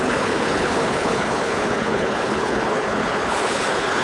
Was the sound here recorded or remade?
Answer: remade